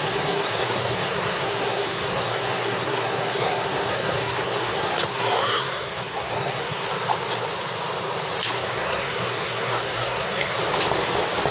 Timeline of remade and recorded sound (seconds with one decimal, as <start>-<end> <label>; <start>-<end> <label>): 0.0-6.8 remade; 6.8-8.5 recorded; 8.5-10.6 remade; 10.6-11.5 recorded